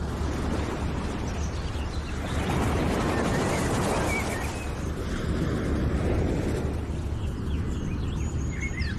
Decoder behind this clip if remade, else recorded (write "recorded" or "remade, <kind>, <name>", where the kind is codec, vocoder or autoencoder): recorded